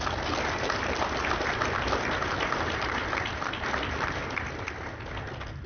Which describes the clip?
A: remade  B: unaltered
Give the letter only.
B